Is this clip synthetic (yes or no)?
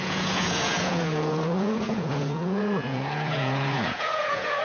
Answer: yes